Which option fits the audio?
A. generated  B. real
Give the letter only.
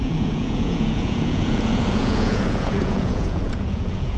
A